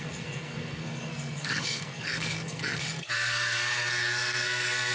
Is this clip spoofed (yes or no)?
yes